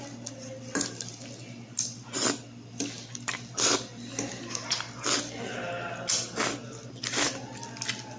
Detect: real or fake real